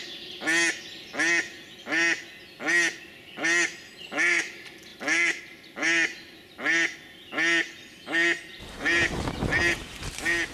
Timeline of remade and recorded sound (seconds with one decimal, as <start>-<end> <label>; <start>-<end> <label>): 0.0-10.5 recorded